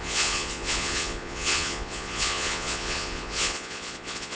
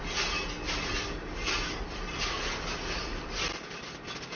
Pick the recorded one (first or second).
second